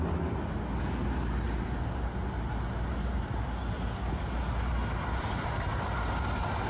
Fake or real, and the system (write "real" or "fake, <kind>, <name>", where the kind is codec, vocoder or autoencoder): real